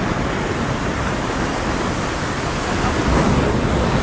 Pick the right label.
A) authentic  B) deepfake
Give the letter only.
A